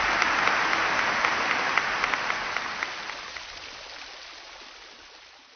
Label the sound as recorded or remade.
recorded